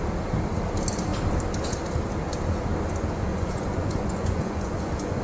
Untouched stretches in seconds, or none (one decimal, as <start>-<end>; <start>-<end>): 0.0-3.3